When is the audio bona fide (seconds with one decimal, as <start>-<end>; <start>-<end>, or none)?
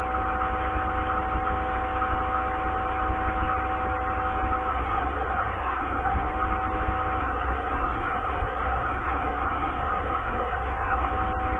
0.0-4.7; 6.3-7.2; 11.1-11.6